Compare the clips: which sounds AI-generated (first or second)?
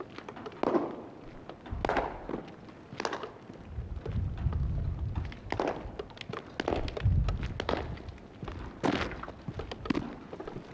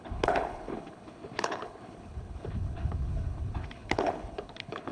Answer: second